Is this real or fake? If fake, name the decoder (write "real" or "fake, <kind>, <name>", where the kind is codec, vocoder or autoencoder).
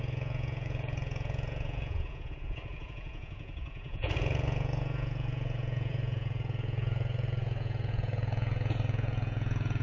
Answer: fake, vocoder, Vocos